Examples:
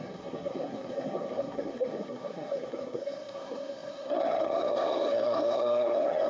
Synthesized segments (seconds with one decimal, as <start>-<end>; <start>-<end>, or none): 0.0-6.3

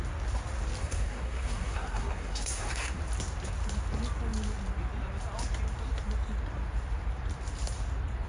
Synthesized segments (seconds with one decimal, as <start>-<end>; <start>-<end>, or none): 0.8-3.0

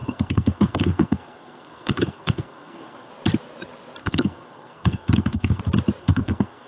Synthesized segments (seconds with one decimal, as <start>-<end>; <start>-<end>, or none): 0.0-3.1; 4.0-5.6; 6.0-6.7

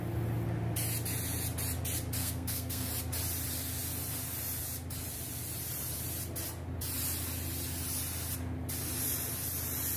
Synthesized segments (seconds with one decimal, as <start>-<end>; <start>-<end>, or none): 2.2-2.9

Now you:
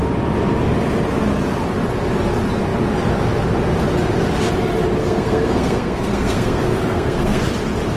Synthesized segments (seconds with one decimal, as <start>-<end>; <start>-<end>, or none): 5.0-7.4